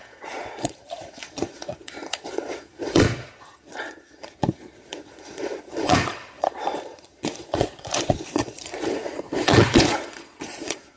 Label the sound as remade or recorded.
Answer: remade